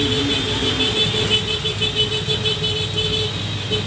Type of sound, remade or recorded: recorded